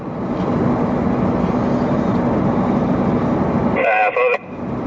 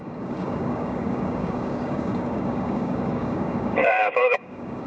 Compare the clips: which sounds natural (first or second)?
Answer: first